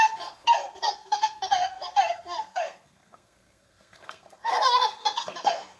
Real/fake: fake